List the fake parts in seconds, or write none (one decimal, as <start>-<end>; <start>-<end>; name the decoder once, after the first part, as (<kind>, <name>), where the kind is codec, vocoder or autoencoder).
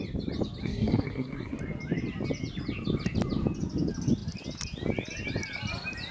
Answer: 0.6-1.6 (codec, SNAC)